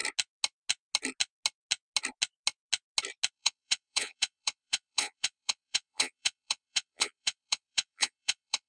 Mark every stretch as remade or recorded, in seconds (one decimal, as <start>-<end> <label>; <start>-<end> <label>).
0.0-3.3 recorded; 3.3-8.7 remade